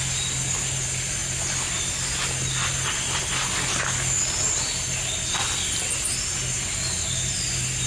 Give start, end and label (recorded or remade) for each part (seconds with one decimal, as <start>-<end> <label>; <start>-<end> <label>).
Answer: 0.0-7.9 recorded